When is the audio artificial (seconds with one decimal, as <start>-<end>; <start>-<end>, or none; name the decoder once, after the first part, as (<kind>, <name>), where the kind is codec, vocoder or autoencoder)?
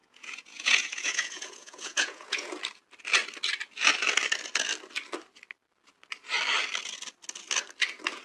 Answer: 0.0-2.5 (vocoder, Vocos)